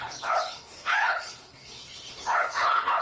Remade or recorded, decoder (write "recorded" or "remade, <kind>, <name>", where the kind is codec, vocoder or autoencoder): remade, codec, HILCodec